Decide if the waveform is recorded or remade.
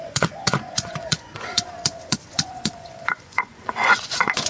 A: remade